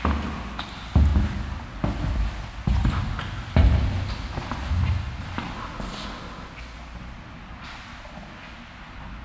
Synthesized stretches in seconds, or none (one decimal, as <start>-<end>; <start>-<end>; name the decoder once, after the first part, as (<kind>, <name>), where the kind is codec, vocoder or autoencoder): none

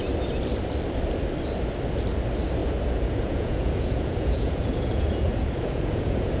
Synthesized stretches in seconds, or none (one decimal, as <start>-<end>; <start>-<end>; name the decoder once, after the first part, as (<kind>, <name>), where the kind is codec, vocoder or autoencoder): 2.6-6.4 (vocoder, Vocos)

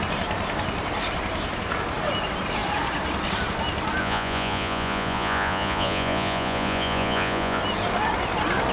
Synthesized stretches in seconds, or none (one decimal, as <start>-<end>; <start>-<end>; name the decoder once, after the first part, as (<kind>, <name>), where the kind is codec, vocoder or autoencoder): 4.0-7.6 (vocoder, Vocos)

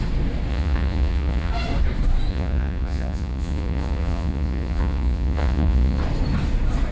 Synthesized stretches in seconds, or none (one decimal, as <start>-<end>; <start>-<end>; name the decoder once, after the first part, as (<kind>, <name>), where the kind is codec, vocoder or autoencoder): 0.5-1.5 (vocoder, Vocos); 2.3-6.0

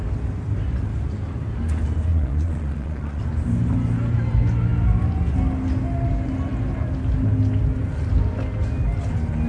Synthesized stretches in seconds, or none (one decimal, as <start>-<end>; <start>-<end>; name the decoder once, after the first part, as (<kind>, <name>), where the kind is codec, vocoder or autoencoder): 2.1-3.2 (vocoder, Vocos)